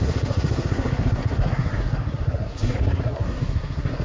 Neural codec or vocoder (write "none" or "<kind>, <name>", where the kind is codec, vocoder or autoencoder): codec, SNAC